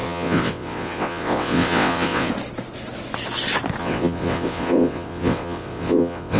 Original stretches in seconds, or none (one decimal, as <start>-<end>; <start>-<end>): 2.3-3.8